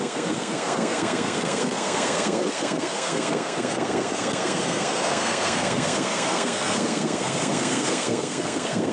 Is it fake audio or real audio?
fake